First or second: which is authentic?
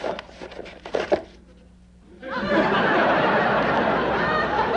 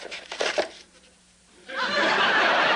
first